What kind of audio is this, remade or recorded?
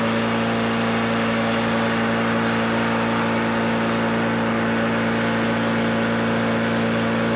recorded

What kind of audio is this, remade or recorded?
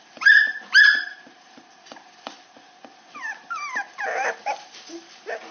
remade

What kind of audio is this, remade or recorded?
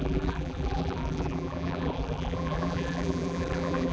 remade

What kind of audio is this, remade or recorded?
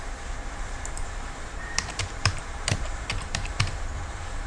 remade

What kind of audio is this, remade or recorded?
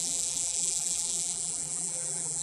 remade